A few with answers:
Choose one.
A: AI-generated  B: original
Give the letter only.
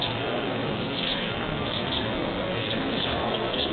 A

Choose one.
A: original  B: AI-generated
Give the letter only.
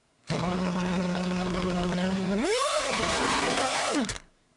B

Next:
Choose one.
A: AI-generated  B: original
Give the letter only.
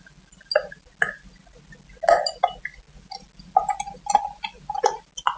B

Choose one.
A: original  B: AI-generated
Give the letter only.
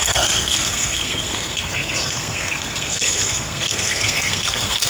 B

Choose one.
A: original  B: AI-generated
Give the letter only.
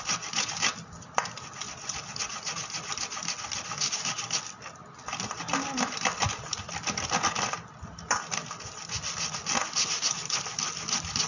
A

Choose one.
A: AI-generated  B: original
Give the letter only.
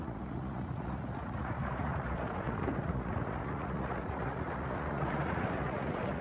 A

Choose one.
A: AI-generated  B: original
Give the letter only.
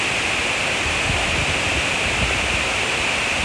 B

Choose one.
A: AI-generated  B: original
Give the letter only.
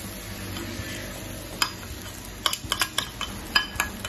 B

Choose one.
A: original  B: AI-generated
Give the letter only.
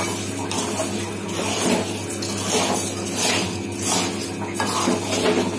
A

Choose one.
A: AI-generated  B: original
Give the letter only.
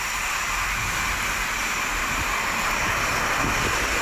B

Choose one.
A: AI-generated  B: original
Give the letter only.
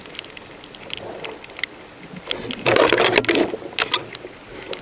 B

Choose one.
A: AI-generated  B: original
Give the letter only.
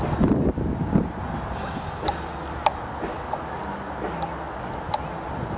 B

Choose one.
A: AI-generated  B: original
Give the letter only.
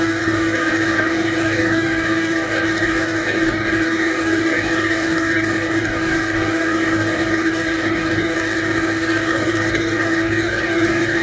A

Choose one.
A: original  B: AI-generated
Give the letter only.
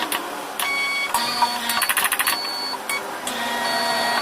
A